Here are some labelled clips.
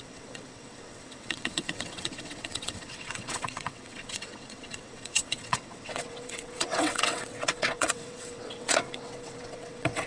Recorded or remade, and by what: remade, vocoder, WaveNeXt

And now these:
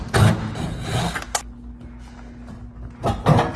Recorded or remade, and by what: recorded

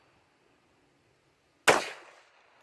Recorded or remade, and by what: recorded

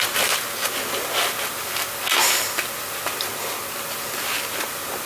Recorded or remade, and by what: recorded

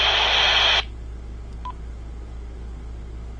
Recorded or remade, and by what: recorded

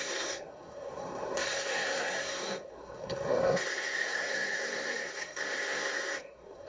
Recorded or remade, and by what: remade, codec, SNAC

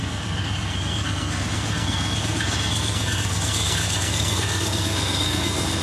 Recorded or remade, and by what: remade, codec, SNAC